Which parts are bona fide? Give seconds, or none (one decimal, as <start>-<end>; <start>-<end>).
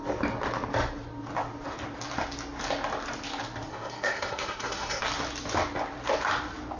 0.0-3.7; 5.0-6.8